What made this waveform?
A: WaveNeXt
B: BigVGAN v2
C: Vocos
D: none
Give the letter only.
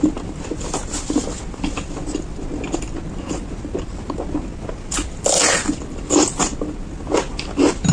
D